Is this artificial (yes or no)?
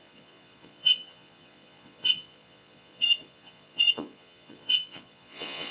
yes